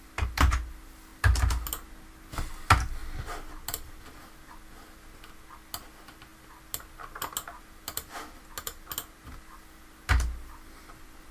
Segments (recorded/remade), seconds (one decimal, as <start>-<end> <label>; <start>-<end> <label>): 0.0-11.3 recorded